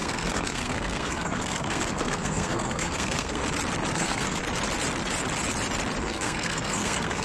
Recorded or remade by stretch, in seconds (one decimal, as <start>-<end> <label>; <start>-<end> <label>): 0.0-3.4 remade; 3.4-3.9 recorded; 3.9-4.4 remade; 4.4-6.0 recorded; 6.0-7.2 remade